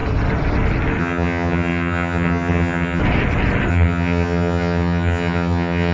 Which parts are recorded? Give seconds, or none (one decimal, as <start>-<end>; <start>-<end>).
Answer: 0.0-1.0; 3.0-3.7